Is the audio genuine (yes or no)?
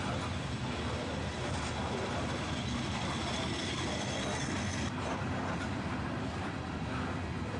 yes